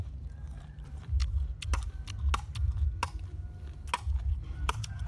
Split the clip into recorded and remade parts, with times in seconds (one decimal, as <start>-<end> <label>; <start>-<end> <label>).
0.0-1.2 remade; 1.2-4.3 recorded; 4.3-5.1 remade